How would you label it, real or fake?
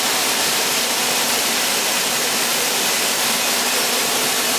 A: fake